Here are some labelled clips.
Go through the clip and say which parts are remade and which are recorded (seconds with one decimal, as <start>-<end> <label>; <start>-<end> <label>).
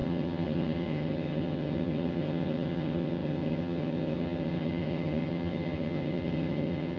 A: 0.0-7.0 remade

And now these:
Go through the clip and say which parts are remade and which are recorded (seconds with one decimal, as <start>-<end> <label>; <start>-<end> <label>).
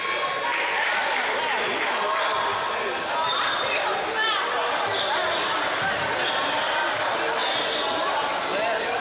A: 0.0-9.0 recorded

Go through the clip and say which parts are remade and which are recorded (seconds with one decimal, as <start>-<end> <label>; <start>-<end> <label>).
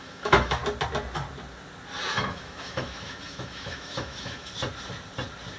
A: 0.0-0.6 remade; 0.6-2.1 recorded; 2.1-4.5 remade; 4.5-5.6 recorded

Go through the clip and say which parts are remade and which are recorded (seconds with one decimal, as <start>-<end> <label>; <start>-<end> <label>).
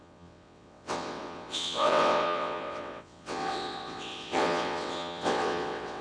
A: 0.0-6.0 remade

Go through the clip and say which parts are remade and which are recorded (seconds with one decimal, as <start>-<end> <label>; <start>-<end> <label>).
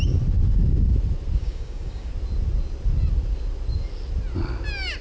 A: 0.0-1.4 recorded; 1.4-2.1 remade; 2.1-5.0 recorded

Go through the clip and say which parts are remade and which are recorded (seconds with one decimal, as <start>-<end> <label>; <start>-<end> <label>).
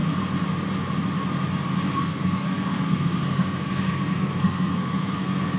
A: 0.0-1.9 recorded; 1.9-5.6 remade